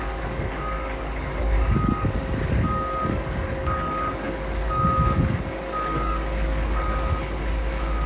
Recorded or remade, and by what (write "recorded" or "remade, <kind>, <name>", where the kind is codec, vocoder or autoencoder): remade, codec, DAC